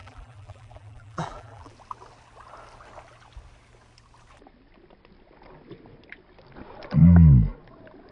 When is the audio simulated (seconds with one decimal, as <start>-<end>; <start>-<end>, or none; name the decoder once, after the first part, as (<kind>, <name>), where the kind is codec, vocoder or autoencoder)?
0.0-1.7 (vocoder, BigVGAN v2)